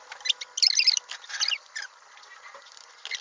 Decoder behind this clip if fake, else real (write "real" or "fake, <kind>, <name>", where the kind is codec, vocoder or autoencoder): real